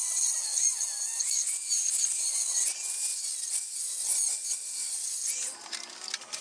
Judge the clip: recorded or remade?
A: recorded